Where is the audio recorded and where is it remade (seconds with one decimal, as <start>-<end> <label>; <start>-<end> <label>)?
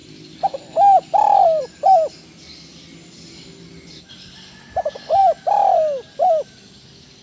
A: 0.0-7.2 recorded